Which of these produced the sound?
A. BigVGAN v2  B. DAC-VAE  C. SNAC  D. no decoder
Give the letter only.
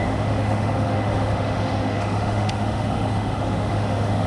B